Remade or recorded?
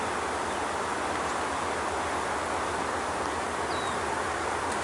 recorded